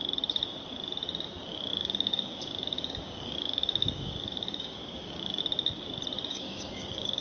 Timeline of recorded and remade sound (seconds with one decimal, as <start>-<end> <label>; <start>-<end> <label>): 0.0-1.7 recorded; 1.7-5.4 remade; 5.4-6.3 recorded; 6.3-7.2 remade